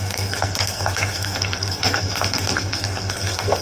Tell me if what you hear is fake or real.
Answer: fake